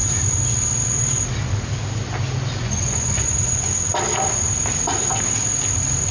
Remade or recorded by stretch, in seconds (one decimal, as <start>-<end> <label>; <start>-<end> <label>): 0.0-2.6 recorded; 2.6-3.7 remade; 3.7-6.1 recorded